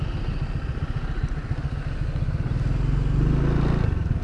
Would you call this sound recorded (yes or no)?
yes